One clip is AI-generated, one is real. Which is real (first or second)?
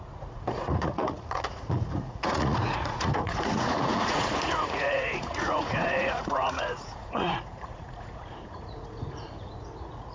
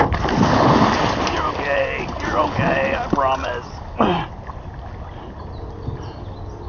second